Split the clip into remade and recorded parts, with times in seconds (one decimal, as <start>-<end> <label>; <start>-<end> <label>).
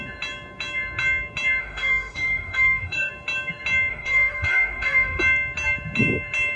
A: 0.0-1.6 recorded; 1.6-3.1 remade; 3.1-3.9 recorded; 3.9-5.2 remade; 5.2-6.6 recorded